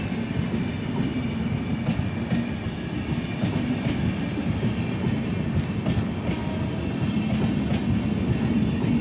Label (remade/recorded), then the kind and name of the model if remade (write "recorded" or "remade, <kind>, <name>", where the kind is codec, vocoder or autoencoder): recorded